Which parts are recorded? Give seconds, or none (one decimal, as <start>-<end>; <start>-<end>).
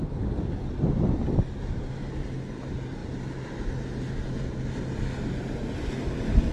0.0-6.5